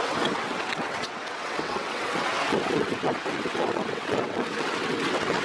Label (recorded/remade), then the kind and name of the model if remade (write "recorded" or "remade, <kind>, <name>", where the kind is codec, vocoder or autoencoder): remade, vocoder, WaveNeXt